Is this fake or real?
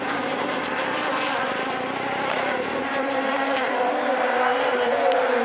fake